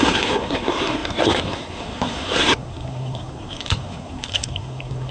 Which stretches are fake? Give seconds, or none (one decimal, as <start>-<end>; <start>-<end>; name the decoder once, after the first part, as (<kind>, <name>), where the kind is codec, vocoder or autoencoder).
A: 0.0-5.1 (codec, SNAC)